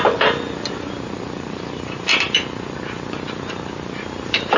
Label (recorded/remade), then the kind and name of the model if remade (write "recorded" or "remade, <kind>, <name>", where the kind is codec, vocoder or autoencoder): remade, vocoder, BigVGAN v2